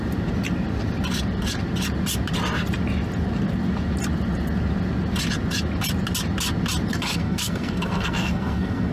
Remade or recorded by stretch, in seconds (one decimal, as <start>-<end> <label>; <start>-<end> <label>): 0.0-6.9 recorded; 6.9-8.9 remade